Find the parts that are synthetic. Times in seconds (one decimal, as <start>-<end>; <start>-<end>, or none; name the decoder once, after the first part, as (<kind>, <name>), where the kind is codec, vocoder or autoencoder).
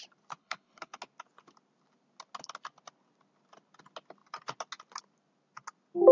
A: 0.4-1.0 (codec, HILCodec)